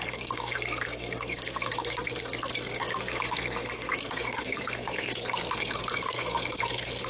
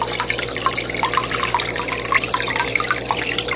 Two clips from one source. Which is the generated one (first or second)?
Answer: first